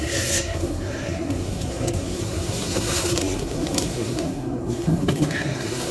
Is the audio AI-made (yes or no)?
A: yes